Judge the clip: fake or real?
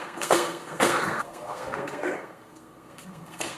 fake